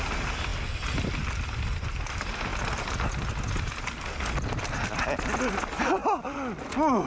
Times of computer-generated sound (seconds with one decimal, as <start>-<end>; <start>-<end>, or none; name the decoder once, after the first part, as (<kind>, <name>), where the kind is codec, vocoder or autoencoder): none